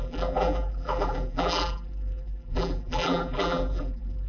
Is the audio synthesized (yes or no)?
yes